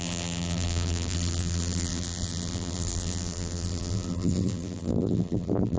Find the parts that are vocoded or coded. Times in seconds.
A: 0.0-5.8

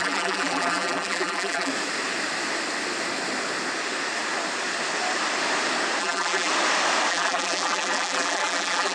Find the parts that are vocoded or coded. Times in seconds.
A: 0.0-1.7; 6.0-6.5; 7.1-8.9

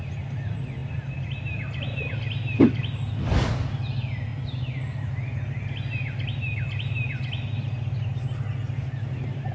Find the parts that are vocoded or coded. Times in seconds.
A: none

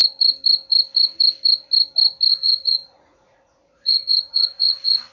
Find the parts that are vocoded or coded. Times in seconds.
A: 2.3-5.1

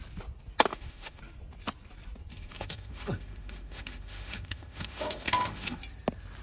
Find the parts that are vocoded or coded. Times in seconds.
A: 0.7-1.2; 2.3-5.8

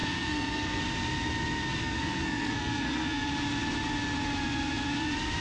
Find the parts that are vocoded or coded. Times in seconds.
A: 0.0-0.8; 1.8-3.3

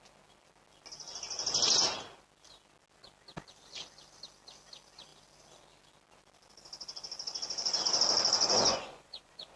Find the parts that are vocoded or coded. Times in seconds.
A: 8.4-9.6

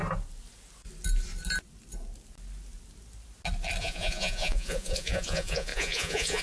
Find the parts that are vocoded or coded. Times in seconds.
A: 3.8-6.4